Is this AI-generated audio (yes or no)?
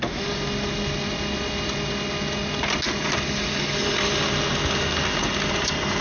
no